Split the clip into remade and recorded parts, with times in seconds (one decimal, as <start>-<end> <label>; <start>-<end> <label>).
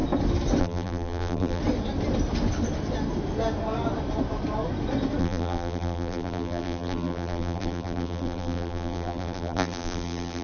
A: 0.0-0.6 recorded; 0.6-1.6 remade; 1.6-5.2 recorded; 5.2-10.4 remade